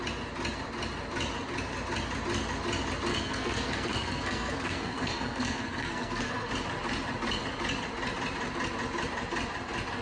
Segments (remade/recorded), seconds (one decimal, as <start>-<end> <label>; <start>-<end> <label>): 0.0-3.1 recorded; 3.1-6.5 remade; 6.5-10.0 recorded